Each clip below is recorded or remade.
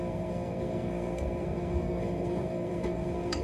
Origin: remade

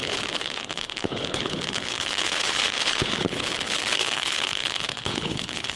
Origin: remade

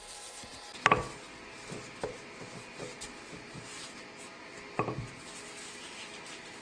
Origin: recorded